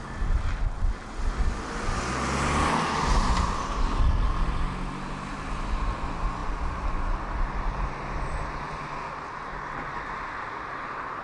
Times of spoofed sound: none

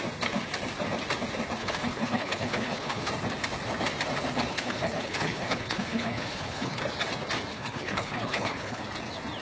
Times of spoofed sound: 1.6-3.1 (codec, HILCodec); 4.5-6.8; 7.5-8.8

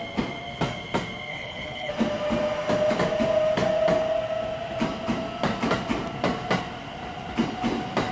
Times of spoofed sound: 1.3-1.9 (codec, HILCodec)

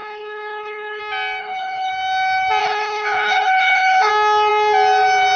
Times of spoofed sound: 0.0-1.0 (codec, HILCodec); 1.4-1.9; 2.6-4.1